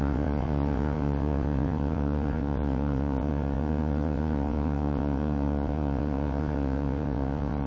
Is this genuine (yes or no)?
no